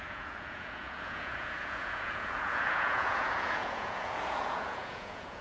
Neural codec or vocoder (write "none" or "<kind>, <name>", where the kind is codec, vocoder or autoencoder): vocoder, Vocos